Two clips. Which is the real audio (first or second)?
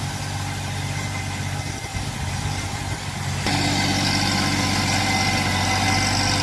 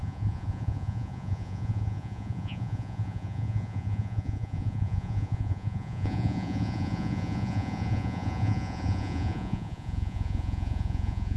first